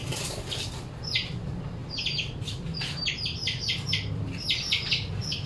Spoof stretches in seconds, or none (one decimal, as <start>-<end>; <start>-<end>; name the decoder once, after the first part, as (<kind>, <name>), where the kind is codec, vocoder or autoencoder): none

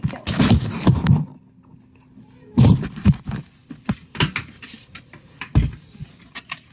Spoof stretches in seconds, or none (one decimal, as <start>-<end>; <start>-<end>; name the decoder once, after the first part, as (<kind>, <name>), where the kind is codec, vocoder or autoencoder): none